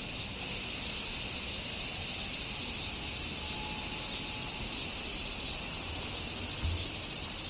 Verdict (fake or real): real